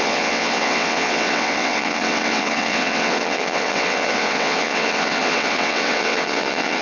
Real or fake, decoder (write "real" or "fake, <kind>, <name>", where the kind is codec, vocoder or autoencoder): fake, vocoder, WaveNeXt